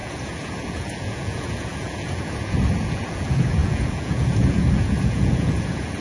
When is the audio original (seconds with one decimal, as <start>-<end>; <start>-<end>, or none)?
none